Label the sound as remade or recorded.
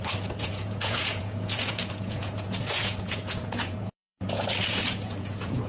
remade